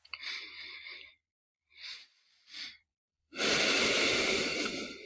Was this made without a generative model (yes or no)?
no